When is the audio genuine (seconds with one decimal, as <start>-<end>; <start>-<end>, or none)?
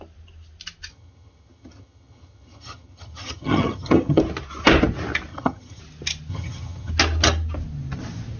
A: 0.0-0.9; 4.2-5.3; 5.8-6.3; 6.9-8.4